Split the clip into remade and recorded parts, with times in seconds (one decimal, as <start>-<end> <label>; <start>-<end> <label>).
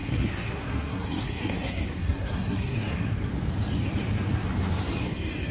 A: 0.0-3.3 remade; 3.3-5.5 recorded